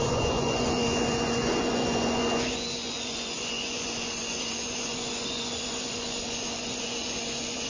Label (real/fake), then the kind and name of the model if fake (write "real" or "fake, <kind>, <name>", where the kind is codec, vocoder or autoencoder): fake, vocoder, Vocos